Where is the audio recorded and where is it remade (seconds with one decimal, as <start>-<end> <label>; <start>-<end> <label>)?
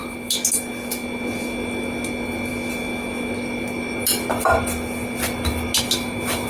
0.0-6.5 recorded